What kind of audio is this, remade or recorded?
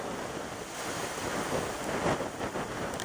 recorded